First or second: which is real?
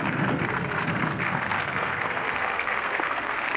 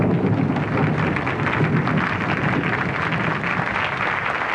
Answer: second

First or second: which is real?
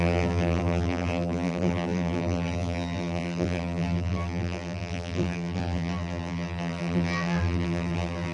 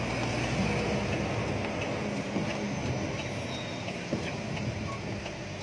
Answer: second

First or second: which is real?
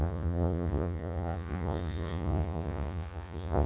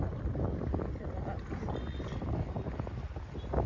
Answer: second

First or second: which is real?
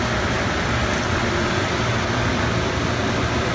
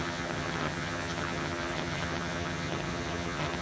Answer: first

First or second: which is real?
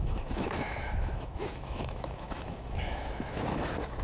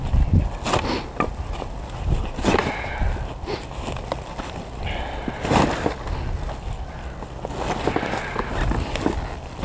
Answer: second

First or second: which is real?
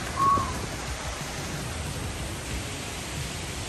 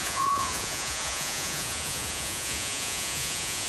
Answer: first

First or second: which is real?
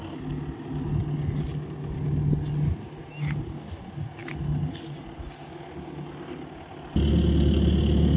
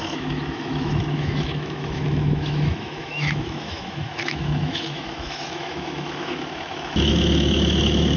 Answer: first